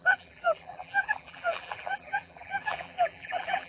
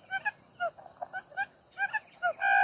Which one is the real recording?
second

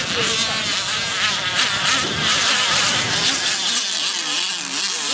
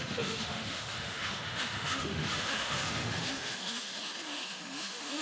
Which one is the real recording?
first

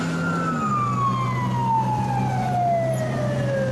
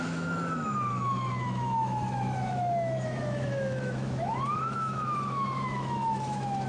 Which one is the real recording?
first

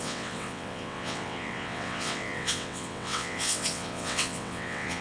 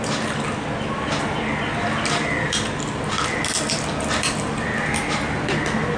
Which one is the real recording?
second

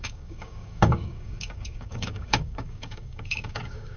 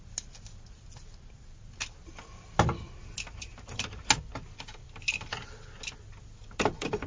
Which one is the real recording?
second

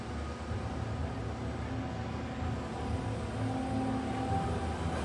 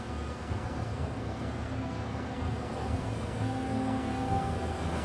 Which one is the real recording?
first